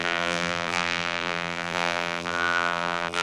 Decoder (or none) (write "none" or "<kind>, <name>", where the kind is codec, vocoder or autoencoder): vocoder, BigVGAN v2